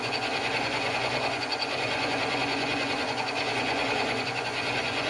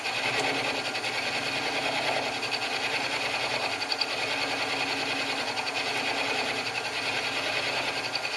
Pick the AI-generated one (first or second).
first